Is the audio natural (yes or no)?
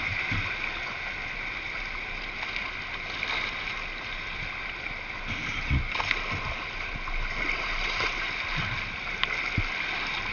yes